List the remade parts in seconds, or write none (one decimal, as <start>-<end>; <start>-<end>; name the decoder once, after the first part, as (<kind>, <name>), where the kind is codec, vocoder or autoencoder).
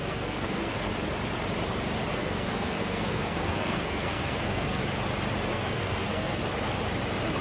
0.0-0.9 (codec, SNAC); 2.1-4.8; 5.5-6.4